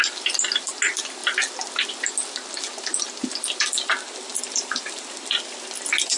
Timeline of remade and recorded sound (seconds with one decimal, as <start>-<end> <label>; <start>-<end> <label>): 0.0-6.2 recorded